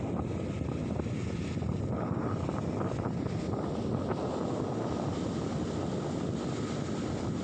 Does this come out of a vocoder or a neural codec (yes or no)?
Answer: no